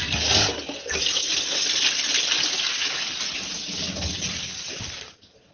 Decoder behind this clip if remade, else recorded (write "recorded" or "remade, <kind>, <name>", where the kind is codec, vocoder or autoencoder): recorded